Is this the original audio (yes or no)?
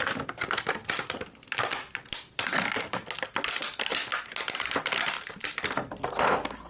yes